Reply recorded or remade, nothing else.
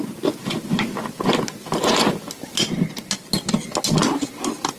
recorded